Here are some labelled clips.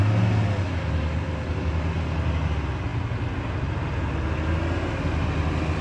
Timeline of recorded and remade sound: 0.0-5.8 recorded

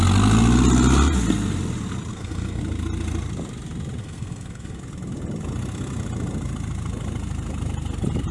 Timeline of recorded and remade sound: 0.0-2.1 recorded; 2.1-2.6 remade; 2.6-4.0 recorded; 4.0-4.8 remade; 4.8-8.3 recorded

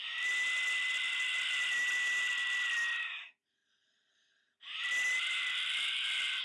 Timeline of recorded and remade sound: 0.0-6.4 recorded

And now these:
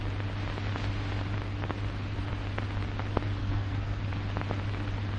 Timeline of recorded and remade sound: 0.0-3.4 recorded; 3.4-4.0 remade; 4.0-5.2 recorded

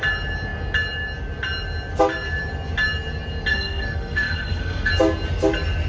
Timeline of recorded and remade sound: 0.0-3.5 recorded; 3.5-4.9 remade; 4.9-5.9 recorded

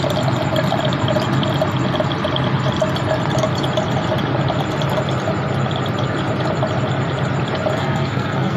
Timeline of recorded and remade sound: 0.0-7.8 recorded; 7.8-8.6 remade

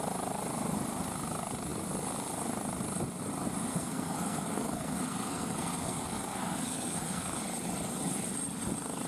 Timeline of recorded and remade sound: 0.0-3.7 recorded; 3.7-7.4 remade; 7.4-9.1 recorded